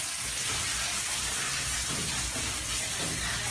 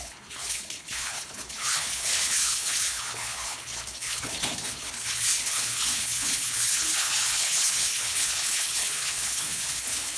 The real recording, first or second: first